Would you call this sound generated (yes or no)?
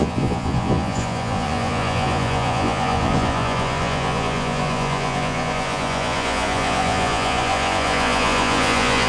yes